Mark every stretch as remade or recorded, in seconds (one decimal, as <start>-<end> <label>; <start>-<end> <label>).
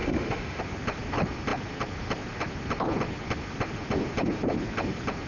0.0-0.6 remade; 0.6-5.3 recorded